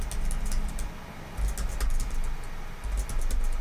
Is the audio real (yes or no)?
yes